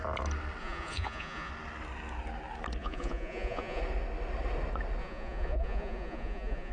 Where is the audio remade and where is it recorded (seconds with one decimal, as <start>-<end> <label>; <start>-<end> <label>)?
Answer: 0.0-0.6 recorded; 0.6-1.5 remade; 1.5-2.8 recorded; 2.8-3.8 remade; 3.8-5.0 recorded; 5.0-6.7 remade